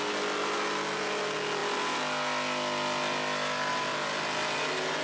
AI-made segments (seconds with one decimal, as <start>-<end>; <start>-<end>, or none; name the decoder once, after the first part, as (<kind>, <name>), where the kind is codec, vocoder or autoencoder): none